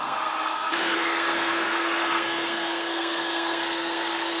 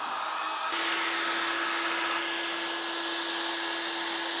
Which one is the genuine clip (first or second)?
second